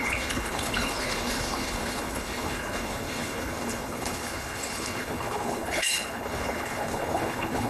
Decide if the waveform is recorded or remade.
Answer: remade